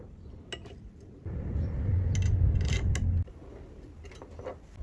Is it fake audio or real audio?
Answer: real